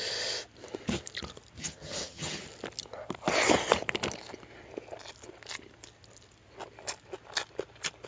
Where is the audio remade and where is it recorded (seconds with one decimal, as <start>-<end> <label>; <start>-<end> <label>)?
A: 0.0-1.6 recorded; 1.6-2.4 remade; 2.4-8.1 recorded